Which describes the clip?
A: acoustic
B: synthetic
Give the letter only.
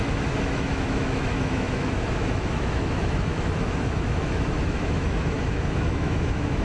B